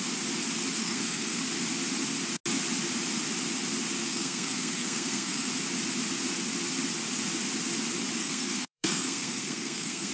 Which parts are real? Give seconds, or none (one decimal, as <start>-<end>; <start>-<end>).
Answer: 0.0-0.8; 1.4-4.0; 5.5-8.2